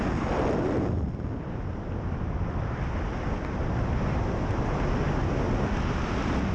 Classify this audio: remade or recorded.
recorded